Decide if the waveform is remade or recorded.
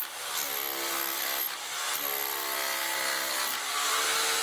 recorded